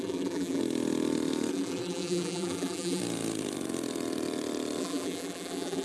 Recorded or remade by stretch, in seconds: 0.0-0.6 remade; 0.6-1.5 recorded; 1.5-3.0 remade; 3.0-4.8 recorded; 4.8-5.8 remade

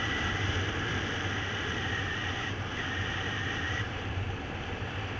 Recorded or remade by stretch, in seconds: 0.0-5.2 recorded

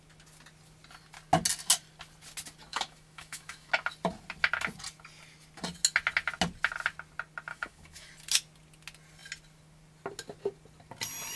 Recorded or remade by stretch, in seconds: 0.0-2.7 recorded; 2.7-3.7 remade; 3.7-7.5 recorded; 7.5-8.1 remade; 8.1-11.4 recorded

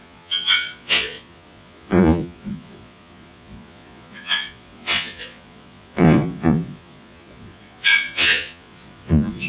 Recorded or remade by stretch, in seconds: 0.0-9.5 remade